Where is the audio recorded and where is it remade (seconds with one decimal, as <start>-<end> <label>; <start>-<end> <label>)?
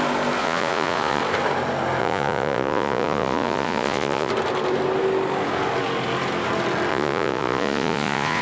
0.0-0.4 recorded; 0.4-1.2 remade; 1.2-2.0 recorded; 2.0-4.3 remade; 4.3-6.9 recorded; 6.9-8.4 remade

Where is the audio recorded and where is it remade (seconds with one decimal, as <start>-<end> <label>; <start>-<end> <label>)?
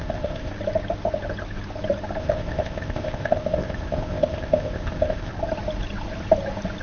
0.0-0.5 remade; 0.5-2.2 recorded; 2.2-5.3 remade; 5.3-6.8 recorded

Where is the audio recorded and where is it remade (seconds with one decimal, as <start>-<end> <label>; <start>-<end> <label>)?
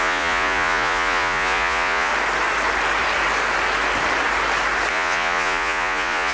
0.0-2.1 remade; 2.1-4.9 recorded; 4.9-6.3 remade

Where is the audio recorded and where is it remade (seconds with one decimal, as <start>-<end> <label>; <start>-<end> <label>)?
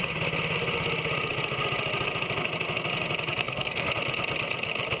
0.0-3.4 recorded; 3.4-3.9 remade; 3.9-5.0 recorded